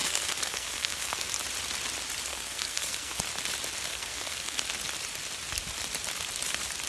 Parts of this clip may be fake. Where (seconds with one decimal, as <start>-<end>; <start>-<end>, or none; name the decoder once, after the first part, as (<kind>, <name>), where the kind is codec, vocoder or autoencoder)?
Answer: 0.0-1.3 (codec, SNAC); 2.3-3.2; 3.9-4.6

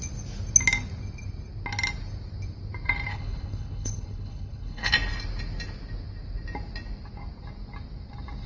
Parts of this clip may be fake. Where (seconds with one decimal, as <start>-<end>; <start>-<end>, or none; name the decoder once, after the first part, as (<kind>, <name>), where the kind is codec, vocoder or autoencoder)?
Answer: 3.1-4.9 (codec, HILCodec)